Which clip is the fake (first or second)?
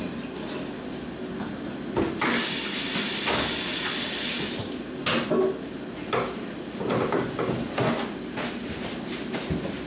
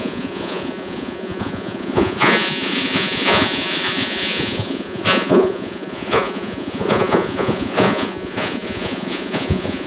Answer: second